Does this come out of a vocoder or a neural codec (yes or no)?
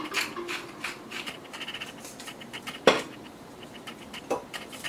yes